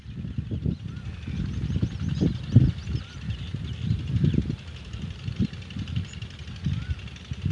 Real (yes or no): yes